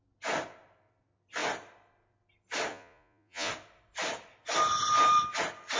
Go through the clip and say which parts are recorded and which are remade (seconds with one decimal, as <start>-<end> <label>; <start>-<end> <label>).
0.0-2.7 recorded; 2.7-3.5 remade; 3.5-5.8 recorded